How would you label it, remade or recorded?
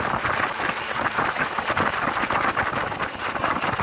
recorded